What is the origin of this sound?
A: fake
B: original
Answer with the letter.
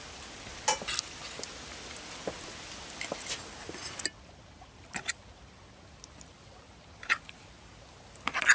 B